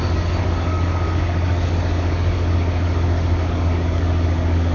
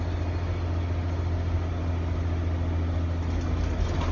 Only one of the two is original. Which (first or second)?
second